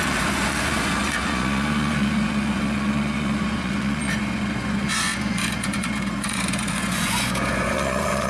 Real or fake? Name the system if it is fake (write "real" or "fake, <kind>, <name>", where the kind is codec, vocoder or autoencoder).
fake, vocoder, Vocos